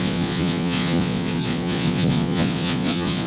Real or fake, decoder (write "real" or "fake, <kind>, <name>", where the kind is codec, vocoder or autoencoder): fake, vocoder, Vocos